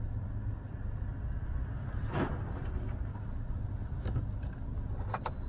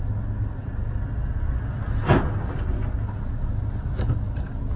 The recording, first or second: second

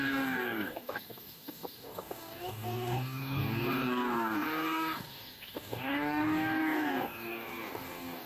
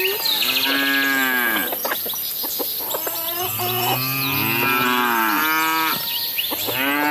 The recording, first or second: second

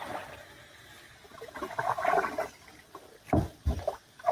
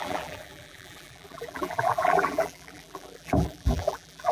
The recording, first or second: first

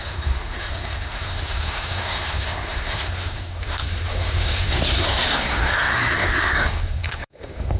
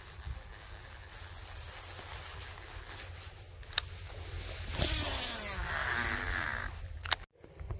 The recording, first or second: second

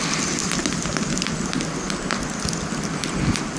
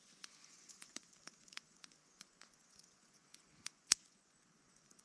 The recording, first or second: first